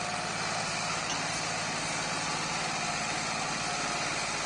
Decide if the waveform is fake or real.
real